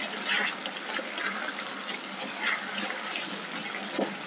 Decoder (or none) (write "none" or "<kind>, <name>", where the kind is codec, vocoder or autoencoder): none